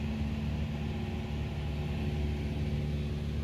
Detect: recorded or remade recorded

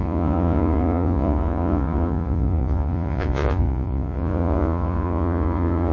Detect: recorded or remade remade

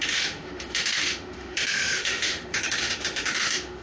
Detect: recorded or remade remade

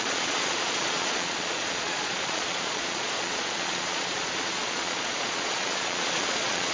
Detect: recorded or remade remade